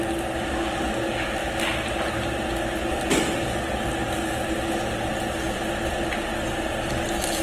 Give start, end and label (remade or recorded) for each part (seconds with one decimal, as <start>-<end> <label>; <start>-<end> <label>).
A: 0.0-7.4 recorded